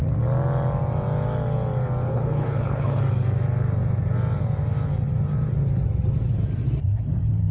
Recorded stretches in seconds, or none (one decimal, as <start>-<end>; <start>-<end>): 0.0-2.1; 3.0-7.5